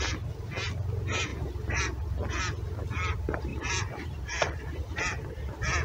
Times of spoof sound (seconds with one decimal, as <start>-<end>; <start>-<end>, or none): 1.3-1.8; 3.5-5.0

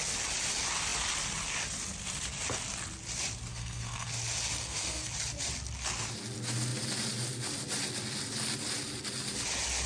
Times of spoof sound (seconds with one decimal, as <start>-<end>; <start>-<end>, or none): 3.5-4.1; 4.6-5.1